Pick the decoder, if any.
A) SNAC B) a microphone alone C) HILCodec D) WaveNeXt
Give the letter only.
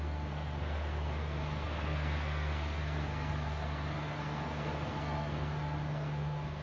A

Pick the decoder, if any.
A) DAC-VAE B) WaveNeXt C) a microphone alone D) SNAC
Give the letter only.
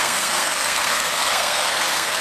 D